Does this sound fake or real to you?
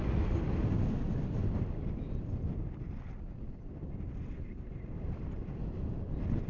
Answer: real